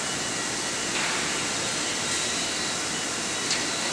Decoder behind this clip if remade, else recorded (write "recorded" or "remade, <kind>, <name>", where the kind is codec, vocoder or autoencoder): recorded